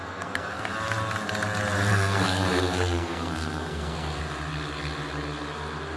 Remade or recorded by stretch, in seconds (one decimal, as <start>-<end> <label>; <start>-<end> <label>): 0.0-0.7 remade; 0.7-1.9 recorded; 1.9-4.2 remade; 4.2-6.0 recorded